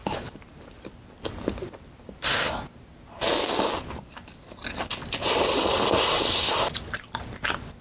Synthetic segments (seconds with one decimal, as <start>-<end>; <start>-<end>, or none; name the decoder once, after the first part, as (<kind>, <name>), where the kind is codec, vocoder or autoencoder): none